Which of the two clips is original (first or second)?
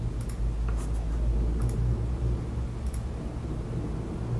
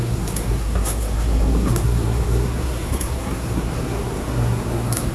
first